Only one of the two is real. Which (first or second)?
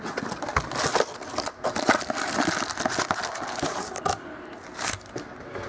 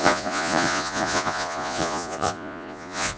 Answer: first